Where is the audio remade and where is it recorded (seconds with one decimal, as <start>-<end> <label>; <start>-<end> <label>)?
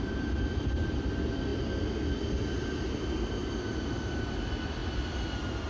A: 0.0-5.7 recorded